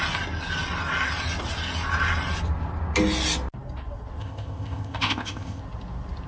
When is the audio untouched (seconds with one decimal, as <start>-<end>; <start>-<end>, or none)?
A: 0.0-4.2; 5.6-6.3

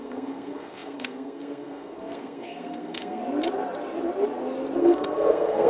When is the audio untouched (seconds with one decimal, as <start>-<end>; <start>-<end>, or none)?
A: 3.2-4.8

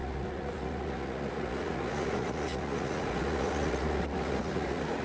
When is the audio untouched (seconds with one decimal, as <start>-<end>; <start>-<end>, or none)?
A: none

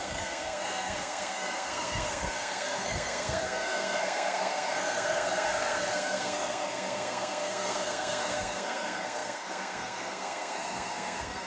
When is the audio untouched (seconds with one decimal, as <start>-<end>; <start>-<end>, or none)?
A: none